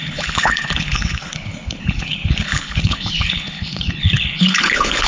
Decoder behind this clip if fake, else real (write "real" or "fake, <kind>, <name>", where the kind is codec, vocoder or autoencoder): fake, codec, HILCodec